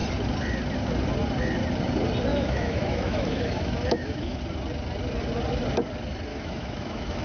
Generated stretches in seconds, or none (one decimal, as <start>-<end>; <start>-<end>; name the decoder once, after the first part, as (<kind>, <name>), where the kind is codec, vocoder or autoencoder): 2.3-4.4 (autoencoder, DAC-VAE); 6.3-7.2